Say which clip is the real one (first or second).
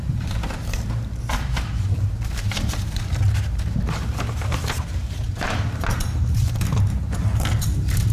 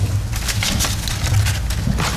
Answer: second